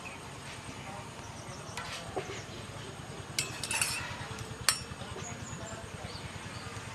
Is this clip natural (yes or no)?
yes